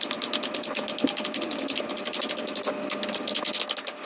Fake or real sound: real